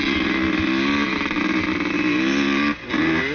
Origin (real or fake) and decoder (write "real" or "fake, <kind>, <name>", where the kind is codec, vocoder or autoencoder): real